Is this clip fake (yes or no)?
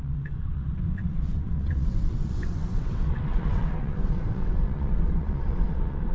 yes